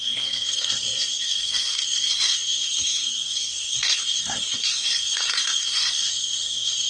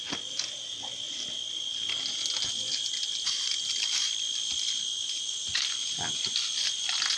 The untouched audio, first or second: second